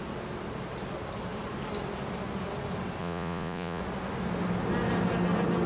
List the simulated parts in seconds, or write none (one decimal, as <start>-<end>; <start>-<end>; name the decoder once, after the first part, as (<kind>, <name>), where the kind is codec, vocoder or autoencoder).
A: 3.0-3.8 (vocoder, Vocos)